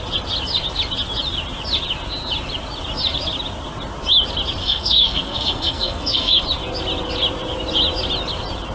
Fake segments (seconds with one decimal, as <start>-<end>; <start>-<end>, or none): 4.6-6.4

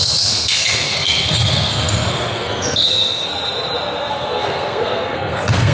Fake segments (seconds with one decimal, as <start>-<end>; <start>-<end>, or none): 0.0-3.3; 4.1-5.7